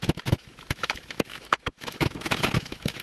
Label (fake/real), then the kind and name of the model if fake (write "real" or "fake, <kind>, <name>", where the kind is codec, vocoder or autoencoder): fake, autoencoder, DAC-VAE